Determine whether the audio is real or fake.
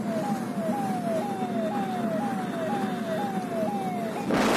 real